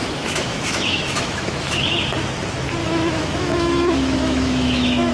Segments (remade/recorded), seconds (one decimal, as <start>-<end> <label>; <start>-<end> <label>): 0.0-1.8 remade; 1.8-2.8 recorded; 2.8-5.1 remade